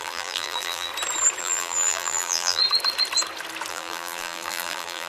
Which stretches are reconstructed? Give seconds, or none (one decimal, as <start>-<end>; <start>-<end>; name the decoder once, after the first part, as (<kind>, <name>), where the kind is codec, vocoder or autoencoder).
0.0-0.9 (vocoder, BigVGAN v2); 1.4-2.6; 3.7-5.1